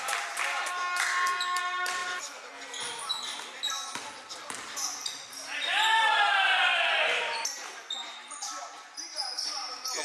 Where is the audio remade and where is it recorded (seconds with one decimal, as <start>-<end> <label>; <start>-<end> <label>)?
0.0-0.8 remade; 0.8-1.6 recorded; 1.6-2.0 remade; 2.0-6.0 recorded; 6.0-10.0 remade